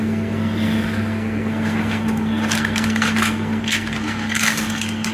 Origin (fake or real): fake